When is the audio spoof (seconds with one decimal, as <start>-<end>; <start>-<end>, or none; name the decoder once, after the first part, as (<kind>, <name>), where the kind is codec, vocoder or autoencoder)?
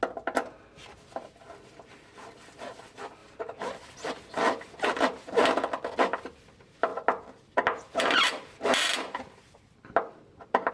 none